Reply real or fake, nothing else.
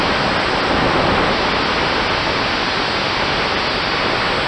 real